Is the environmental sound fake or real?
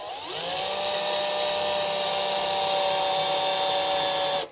real